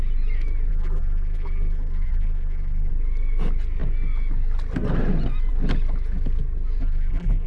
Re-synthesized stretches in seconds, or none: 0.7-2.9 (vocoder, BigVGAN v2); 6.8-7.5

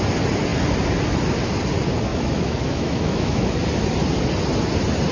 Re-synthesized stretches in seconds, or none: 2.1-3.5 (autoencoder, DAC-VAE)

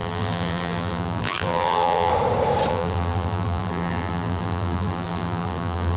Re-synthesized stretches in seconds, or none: 0.0-2.1 (vocoder, BigVGAN v2); 2.7-6.0